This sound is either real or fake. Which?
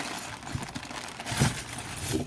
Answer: real